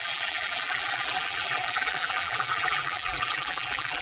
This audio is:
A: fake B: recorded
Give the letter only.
A